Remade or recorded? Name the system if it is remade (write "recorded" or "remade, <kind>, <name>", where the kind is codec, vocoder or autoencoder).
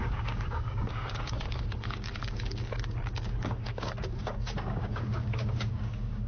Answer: remade, codec, DAC